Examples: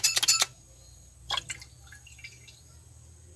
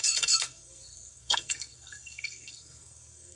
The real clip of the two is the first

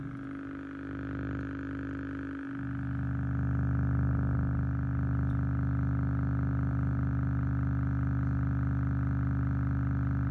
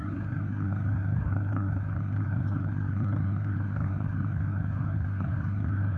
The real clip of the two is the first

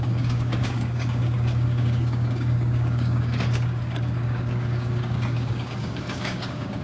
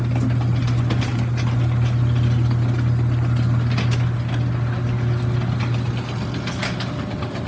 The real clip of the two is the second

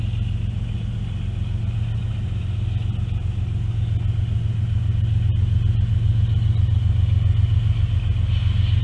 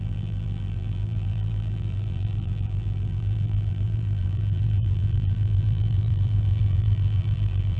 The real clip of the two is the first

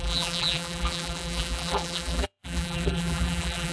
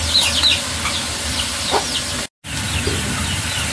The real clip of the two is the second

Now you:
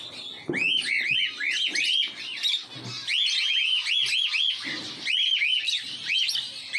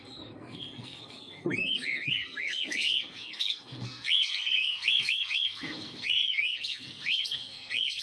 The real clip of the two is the first